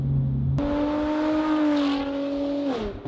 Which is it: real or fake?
real